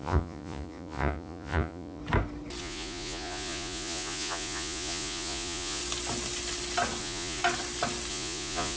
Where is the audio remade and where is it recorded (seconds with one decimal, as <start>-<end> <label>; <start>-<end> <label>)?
0.0-2.0 remade; 2.0-2.6 recorded; 2.6-5.8 remade; 5.8-7.0 recorded; 7.0-7.4 remade; 7.4-8.1 recorded; 8.1-8.8 remade